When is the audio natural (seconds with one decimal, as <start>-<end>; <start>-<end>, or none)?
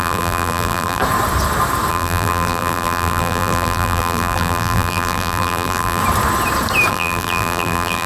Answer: 1.0-1.9; 6.0-6.9